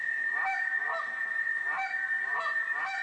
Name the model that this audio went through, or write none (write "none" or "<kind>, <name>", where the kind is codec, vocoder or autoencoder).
none